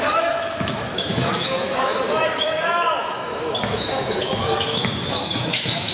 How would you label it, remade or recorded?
remade